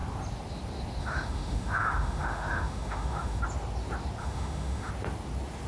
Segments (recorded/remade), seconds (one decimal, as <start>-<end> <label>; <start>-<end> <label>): 0.0-1.0 recorded; 1.0-3.4 remade; 3.4-4.2 recorded; 4.2-4.9 remade; 4.9-5.7 recorded